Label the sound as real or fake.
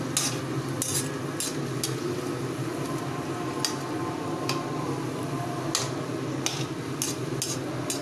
real